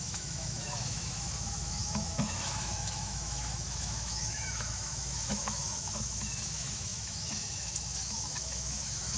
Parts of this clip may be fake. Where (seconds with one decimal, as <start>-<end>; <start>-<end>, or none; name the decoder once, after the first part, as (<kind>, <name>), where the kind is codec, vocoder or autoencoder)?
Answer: 0.0-9.2 (autoencoder, DAC-VAE)